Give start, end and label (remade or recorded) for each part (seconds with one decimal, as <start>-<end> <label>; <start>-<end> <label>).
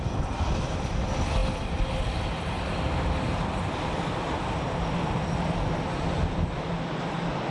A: 0.0-7.5 recorded